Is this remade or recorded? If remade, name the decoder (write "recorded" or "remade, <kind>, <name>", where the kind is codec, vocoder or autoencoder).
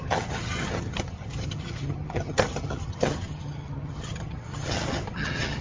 remade, vocoder, HiFi-GAN